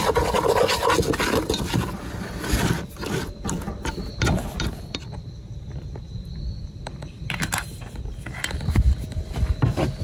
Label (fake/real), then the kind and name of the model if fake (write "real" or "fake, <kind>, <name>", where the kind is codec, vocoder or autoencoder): real